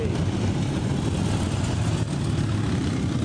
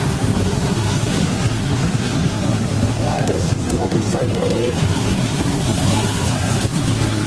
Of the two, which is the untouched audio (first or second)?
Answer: first